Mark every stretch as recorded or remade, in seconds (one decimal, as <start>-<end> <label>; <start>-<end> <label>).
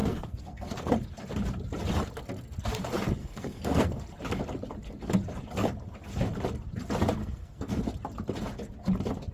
0.0-0.9 remade; 0.9-3.2 recorded; 3.2-4.0 remade; 4.0-7.2 recorded; 7.2-7.8 remade; 7.8-9.3 recorded